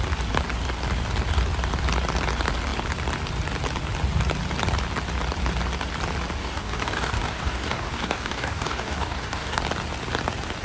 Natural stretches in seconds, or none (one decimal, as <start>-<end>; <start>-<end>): 0.0-6.4; 9.6-10.6